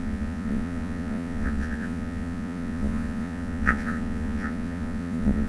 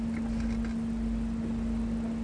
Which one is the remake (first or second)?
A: first